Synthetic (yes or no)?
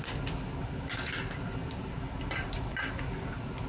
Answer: no